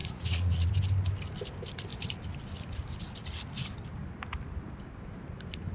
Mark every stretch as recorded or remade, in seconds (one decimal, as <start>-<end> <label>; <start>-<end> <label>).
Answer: 0.0-0.7 remade; 0.7-5.7 recorded